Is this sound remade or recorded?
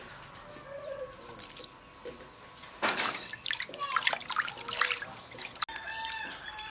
recorded